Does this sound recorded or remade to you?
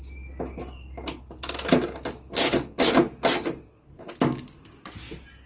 recorded